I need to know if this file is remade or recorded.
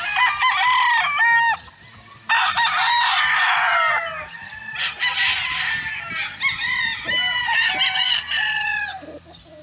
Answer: recorded